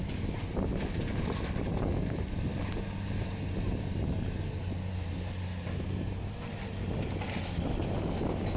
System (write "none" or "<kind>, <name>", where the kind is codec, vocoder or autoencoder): none